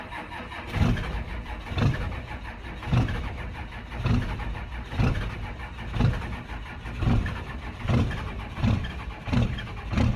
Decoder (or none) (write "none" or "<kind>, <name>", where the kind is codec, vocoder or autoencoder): vocoder, BigVGAN v2